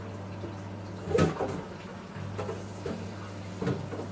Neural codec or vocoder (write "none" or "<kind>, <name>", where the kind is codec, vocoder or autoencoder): none